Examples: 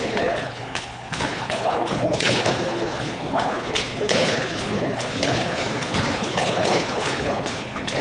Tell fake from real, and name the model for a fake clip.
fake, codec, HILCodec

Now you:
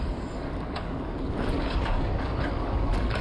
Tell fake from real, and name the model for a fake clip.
fake, codec, DAC